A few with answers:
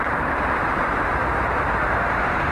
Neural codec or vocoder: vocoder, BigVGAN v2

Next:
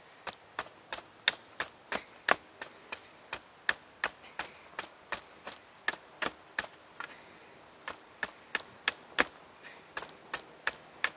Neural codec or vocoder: none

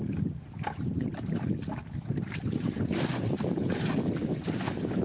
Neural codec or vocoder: none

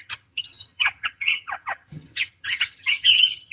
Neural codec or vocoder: vocoder, HiFi-GAN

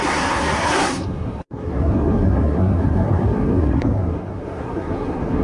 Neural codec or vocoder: codec, SNAC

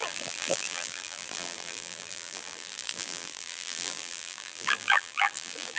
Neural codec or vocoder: vocoder, BigVGAN v2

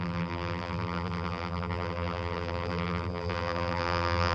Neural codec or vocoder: vocoder, BigVGAN v2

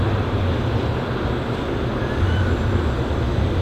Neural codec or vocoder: none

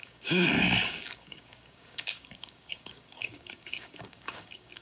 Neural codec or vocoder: codec, DAC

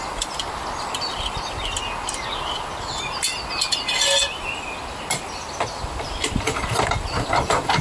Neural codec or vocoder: none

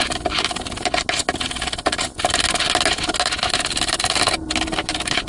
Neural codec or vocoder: none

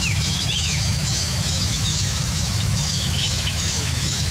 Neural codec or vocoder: autoencoder, DAC-VAE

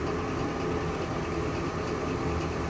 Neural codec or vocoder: none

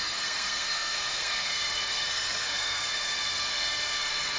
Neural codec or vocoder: codec, SNAC